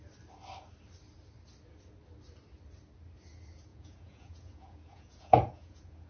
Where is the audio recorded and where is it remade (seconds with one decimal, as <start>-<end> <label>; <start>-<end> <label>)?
0.0-3.7 recorded; 3.7-6.1 remade